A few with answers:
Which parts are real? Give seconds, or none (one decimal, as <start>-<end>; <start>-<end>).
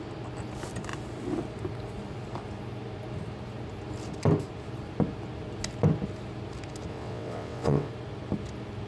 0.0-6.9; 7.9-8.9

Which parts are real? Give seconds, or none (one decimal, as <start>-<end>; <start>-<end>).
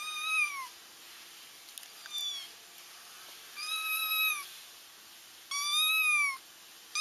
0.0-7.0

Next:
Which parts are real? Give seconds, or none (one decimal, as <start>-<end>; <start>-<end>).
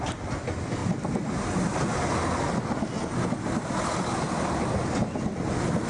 0.0-5.9